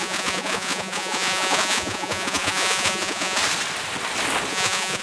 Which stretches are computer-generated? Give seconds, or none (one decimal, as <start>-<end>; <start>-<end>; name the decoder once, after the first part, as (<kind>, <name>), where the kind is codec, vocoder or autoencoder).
0.0-3.4 (vocoder, Vocos); 4.5-5.0